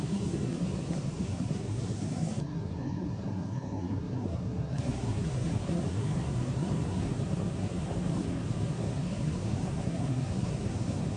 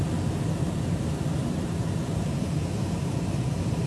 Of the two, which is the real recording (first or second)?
second